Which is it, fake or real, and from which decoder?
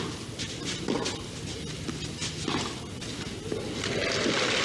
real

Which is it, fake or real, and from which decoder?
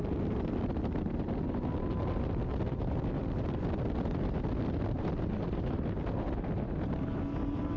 real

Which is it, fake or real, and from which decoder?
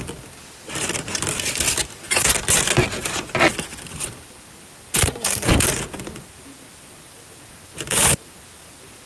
fake, vocoder, BigVGAN v2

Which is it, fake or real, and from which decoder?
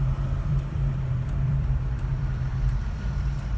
fake, vocoder, BigVGAN v2